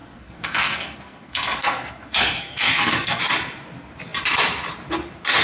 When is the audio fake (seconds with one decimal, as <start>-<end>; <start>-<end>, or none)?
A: 0.0-3.2